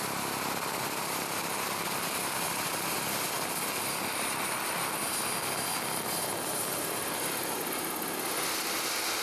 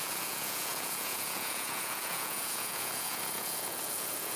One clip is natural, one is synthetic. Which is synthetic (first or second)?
second